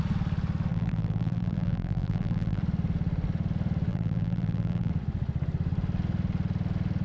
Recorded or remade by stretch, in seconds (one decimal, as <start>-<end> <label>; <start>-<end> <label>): 0.0-0.7 recorded; 0.7-2.6 remade; 2.6-3.9 recorded; 3.9-4.9 remade; 4.9-7.0 recorded